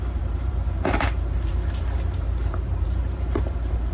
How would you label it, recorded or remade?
remade